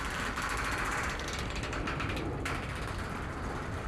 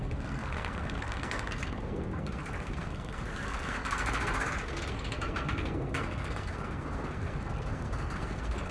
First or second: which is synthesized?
second